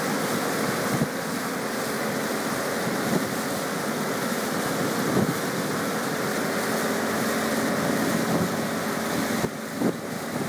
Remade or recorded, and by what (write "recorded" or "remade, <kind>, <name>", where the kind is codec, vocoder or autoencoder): recorded